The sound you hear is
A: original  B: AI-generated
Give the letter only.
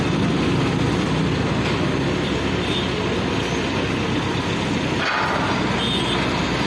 A